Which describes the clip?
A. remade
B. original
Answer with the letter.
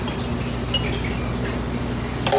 B